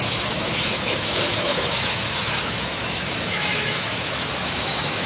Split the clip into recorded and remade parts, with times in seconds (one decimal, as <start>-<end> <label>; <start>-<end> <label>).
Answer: 0.0-5.1 remade